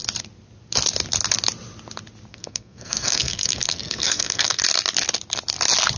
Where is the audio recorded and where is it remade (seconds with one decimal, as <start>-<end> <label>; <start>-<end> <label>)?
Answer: 0.0-2.3 recorded; 2.3-4.6 remade; 4.6-6.0 recorded